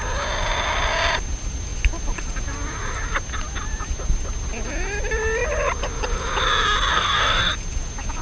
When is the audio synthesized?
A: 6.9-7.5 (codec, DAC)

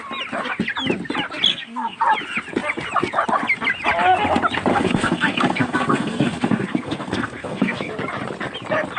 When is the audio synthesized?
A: 1.5-2.0 (codec, SNAC); 4.7-7.9

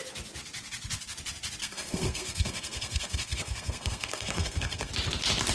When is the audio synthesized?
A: 1.6-4.9 (codec, SNAC)

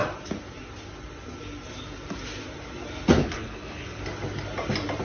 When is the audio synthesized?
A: 3.2-4.0 (codec, HILCodec)

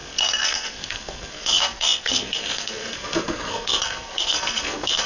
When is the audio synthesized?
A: 0.0-5.1 (codec, SNAC)

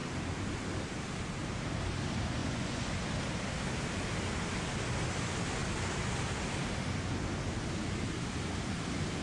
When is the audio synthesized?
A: 2.4-2.9 (vocoder, Vocos)

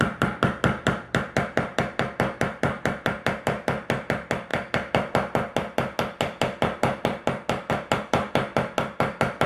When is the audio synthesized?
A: none

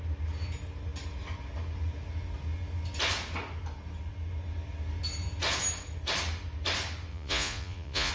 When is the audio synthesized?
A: 7.1-8.1 (vocoder, Vocos)